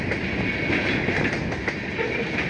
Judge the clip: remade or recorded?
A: recorded